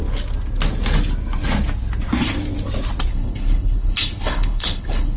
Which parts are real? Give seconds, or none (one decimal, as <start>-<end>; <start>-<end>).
0.0-3.1